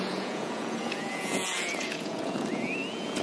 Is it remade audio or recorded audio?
remade